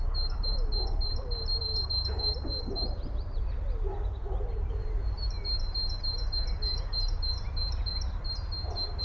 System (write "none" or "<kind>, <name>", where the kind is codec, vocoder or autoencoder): vocoder, BigVGAN v2